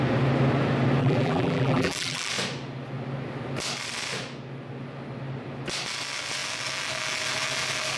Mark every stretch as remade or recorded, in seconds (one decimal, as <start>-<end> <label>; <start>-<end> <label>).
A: 0.0-1.0 recorded; 1.0-2.3 remade; 2.3-8.0 recorded